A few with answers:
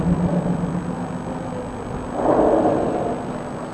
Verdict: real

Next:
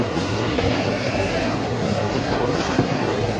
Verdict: fake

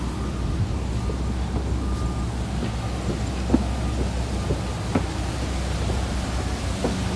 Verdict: real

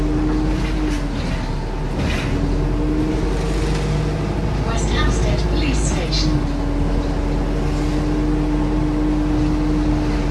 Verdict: real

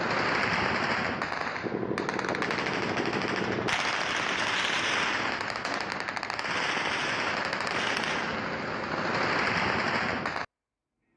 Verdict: real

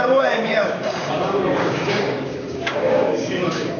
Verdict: fake